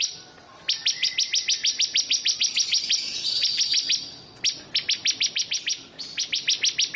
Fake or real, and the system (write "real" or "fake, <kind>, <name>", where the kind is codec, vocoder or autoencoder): real